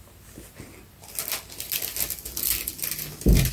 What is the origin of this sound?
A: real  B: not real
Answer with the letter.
A